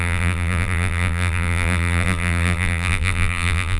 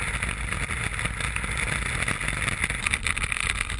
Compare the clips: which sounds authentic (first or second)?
second